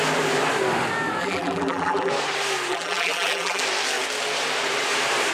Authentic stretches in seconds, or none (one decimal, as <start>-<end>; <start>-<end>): 0.0-1.2; 2.1-2.7; 3.6-5.3